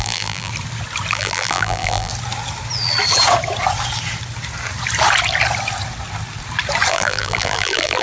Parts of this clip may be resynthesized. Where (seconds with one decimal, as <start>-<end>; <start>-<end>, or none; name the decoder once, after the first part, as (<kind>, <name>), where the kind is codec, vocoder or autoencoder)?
0.0-0.5 (vocoder, BigVGAN v2); 1.1-2.1; 6.9-8.0